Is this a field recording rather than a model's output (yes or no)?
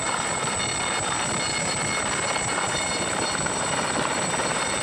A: yes